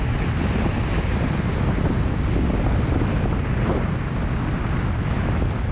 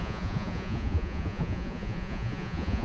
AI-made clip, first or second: second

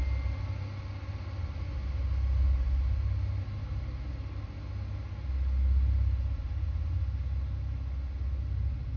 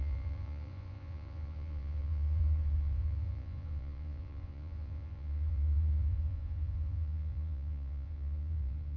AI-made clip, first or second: second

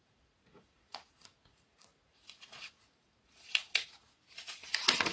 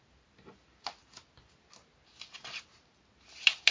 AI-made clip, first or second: first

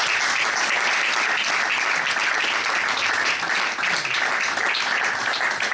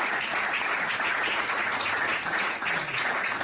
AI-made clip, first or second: second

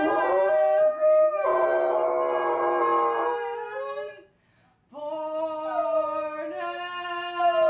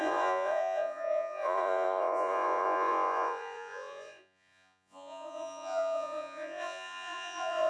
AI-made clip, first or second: second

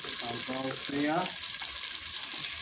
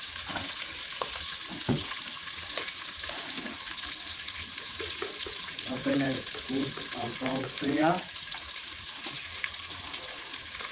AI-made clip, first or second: second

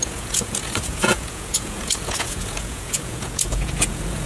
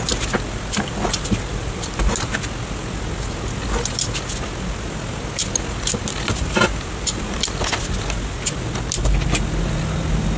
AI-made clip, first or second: first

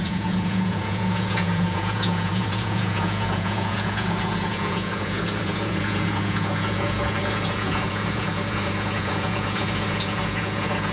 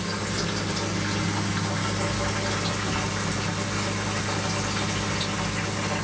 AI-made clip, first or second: first